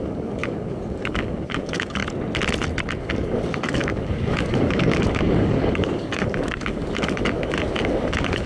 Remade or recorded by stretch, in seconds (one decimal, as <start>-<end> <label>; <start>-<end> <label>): 0.0-2.0 remade; 2.0-3.0 recorded; 3.0-8.5 remade